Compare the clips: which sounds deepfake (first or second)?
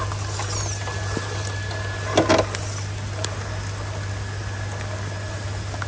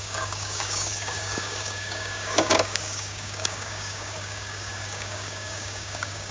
second